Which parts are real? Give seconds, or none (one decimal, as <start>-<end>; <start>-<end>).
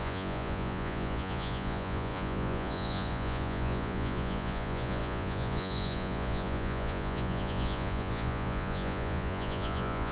none